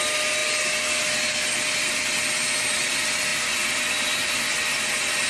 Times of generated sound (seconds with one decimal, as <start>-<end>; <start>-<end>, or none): none

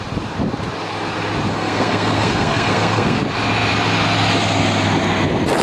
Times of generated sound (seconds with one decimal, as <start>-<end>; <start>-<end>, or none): 1.5-3.2

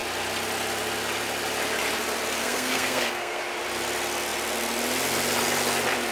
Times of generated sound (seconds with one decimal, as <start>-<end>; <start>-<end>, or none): 2.4-3.4

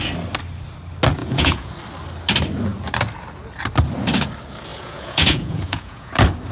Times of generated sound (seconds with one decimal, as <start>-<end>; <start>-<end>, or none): 1.2-1.7; 4.7-6.1

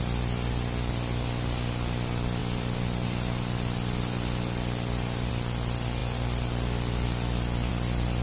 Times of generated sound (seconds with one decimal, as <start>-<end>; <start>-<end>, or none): none